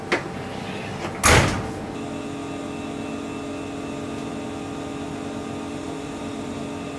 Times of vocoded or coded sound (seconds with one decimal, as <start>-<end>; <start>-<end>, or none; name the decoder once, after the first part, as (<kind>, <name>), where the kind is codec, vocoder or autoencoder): 5.7-6.6 (vocoder, BigVGAN v2)